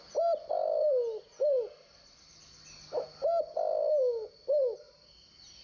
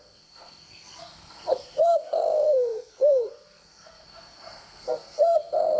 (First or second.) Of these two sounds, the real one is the first